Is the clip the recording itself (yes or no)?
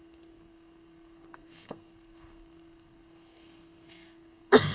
no